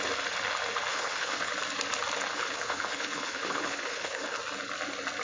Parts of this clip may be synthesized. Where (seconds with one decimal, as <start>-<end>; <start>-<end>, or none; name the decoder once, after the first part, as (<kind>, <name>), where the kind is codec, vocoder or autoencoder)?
0.9-1.5 (codec, HILCodec); 2.3-4.4